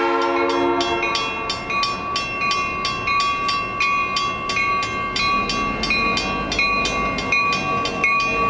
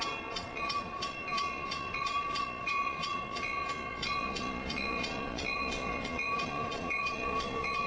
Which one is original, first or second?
first